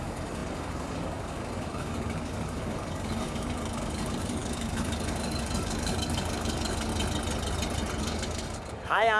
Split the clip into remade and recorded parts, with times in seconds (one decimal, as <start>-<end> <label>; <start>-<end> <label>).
0.0-6.9 remade; 6.9-8.0 recorded; 8.0-9.2 remade